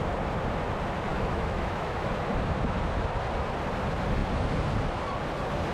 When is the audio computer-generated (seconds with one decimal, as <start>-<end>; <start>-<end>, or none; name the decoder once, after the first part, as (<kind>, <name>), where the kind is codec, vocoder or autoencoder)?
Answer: 1.1-2.1 (autoencoder, DAC-VAE)

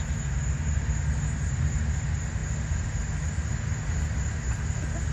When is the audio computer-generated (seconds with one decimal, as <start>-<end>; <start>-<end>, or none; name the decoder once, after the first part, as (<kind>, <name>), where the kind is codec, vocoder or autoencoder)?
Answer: none

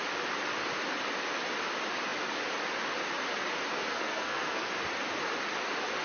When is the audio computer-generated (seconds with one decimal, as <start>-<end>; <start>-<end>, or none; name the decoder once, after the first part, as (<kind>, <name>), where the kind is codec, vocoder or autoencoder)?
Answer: 3.9-4.7 (codec, SNAC)

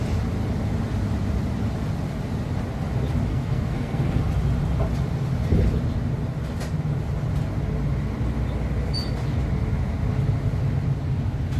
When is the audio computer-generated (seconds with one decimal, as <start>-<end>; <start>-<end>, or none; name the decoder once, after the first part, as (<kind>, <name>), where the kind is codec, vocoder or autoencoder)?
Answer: 3.3-4.2 (codec, SNAC)